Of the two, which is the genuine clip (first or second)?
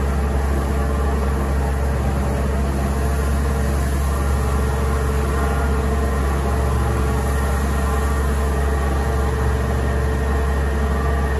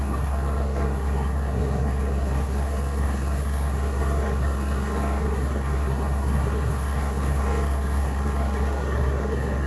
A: first